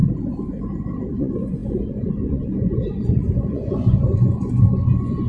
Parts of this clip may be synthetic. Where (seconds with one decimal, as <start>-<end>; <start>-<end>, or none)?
1.1-5.3